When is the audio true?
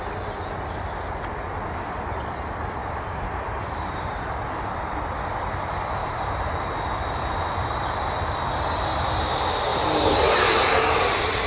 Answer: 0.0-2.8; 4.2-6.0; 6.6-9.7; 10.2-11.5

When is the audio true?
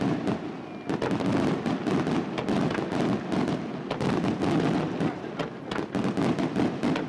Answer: 0.0-7.1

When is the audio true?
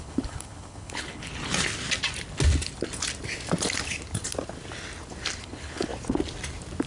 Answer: 1.3-5.4; 5.9-6.9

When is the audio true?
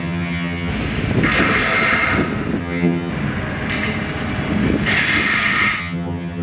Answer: 0.7-2.6; 3.1-5.8